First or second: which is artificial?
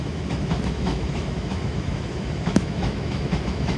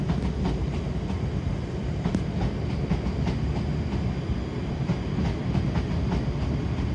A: first